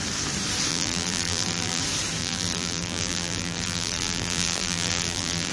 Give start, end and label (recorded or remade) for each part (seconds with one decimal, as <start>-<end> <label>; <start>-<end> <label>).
0.0-0.7 recorded; 0.7-1.8 remade; 1.8-2.2 recorded; 2.2-5.5 remade